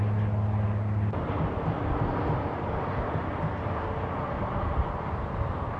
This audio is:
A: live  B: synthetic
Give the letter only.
A